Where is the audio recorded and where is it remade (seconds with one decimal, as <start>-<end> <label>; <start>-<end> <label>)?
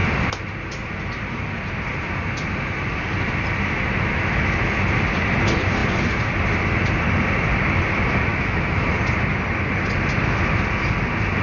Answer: 0.0-8.3 recorded; 8.3-8.9 remade; 8.9-11.4 recorded